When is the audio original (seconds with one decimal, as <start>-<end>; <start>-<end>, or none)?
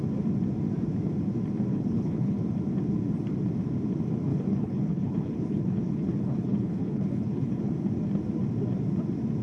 0.0-1.7; 2.4-4.3; 7.7-9.4